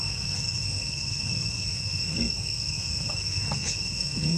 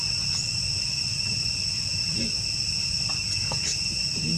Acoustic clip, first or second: second